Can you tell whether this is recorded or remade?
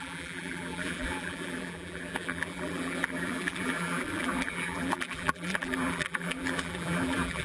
remade